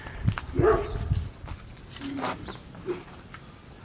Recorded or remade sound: recorded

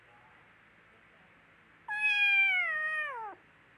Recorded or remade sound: recorded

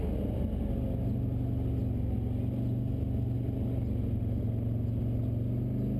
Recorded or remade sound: recorded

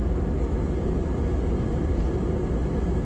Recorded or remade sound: recorded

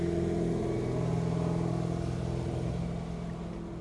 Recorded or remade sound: recorded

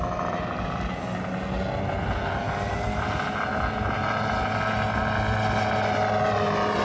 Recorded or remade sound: recorded